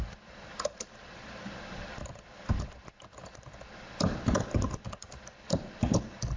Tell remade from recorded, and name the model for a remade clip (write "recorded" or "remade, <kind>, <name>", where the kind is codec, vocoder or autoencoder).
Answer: recorded